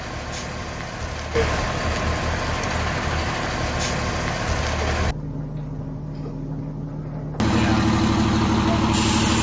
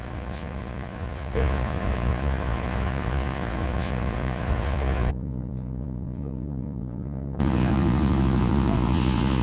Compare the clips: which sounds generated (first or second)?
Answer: second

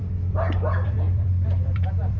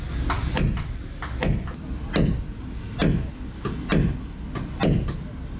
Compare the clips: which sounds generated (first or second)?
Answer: first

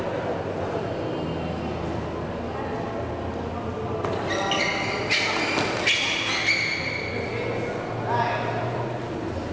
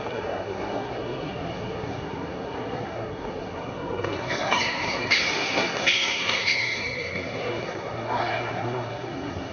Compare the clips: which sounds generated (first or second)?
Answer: second